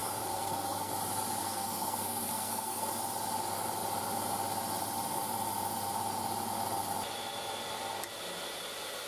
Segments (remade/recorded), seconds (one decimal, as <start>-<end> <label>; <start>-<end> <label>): 0.0-0.9 remade; 0.9-1.4 recorded; 1.4-2.9 remade; 2.9-9.1 recorded